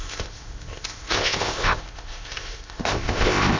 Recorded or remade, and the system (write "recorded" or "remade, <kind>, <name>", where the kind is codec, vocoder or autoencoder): remade, codec, ZipCodec